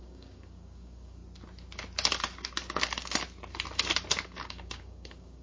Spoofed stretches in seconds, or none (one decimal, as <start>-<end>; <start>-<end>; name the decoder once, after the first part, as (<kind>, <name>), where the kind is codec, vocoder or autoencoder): 0.0-1.2 (codec, DAC); 4.4-5.4